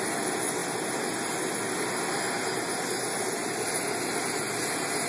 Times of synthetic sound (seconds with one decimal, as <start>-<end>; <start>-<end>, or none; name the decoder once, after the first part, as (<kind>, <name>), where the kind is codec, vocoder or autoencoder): none